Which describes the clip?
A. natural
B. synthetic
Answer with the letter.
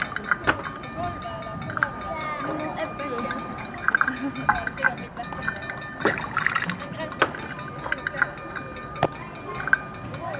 A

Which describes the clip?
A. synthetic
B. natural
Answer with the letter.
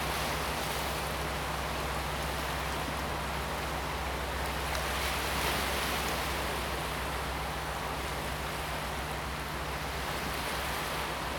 B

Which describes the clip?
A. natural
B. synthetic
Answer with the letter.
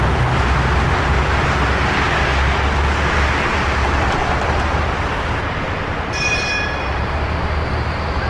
A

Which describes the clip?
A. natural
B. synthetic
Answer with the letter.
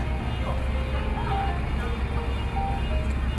A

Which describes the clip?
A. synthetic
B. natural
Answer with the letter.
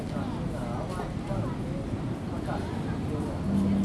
B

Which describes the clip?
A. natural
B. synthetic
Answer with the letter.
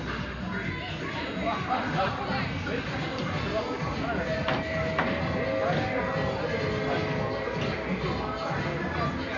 A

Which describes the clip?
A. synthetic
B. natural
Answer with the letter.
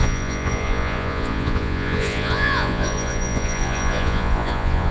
A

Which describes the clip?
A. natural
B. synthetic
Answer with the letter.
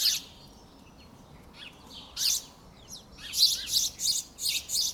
A